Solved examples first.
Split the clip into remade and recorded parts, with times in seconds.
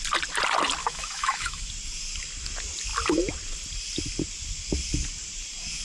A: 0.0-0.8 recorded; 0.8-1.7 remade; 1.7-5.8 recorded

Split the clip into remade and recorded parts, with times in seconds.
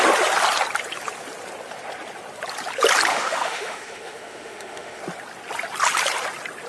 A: 0.0-3.1 recorded; 3.1-5.0 remade; 5.0-6.7 recorded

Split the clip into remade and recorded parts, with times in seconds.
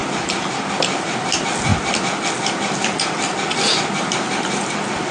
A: 0.0-5.1 recorded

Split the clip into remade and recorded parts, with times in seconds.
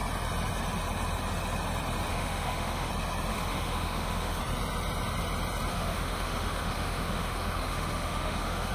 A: 0.0-2.1 recorded; 2.1-2.9 remade; 2.9-3.3 recorded; 3.3-4.4 remade; 4.4-5.7 recorded; 5.7-8.7 remade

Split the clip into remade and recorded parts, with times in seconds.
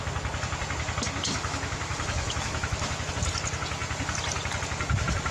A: 0.0-1.2 recorded; 1.2-3.1 remade; 3.1-5.3 recorded